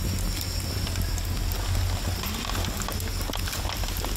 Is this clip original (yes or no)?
yes